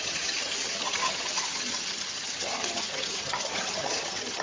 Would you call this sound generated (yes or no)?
yes